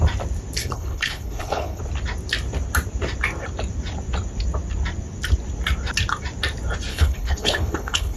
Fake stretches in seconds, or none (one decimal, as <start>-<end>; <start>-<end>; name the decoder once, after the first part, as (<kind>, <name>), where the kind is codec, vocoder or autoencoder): 0.6-1.8 (codec, HILCodec); 6.9-8.2